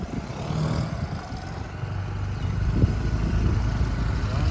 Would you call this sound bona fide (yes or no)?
yes